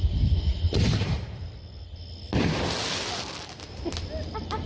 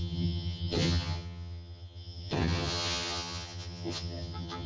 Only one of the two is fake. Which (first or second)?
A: second